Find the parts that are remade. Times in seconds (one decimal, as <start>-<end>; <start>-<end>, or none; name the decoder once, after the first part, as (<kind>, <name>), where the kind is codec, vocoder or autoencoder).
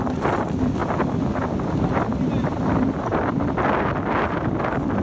none